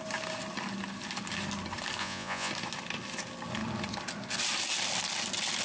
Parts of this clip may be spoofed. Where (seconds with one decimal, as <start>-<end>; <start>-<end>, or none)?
2.0-2.5